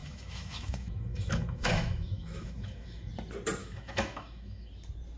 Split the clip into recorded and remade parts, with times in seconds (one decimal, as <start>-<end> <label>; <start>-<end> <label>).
0.0-3.1 remade; 3.1-3.6 recorded; 3.6-4.7 remade; 4.7-5.2 recorded